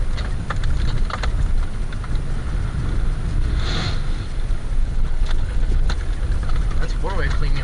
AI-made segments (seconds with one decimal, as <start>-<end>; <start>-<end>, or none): 4.8-5.9